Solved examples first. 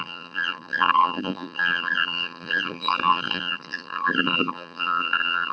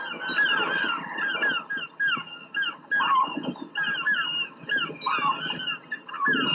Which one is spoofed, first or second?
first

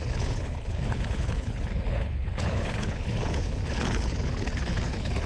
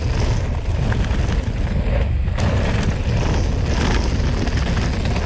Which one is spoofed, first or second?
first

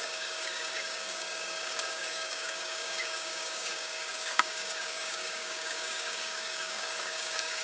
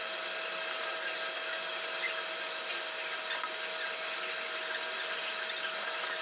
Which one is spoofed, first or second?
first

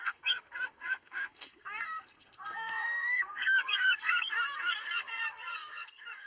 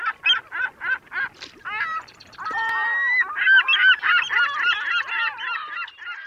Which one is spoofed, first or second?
first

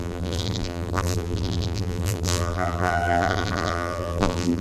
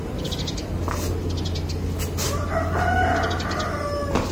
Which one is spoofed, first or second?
first